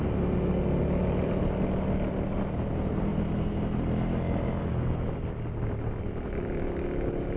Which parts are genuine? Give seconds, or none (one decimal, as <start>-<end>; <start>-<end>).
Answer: 0.0-7.4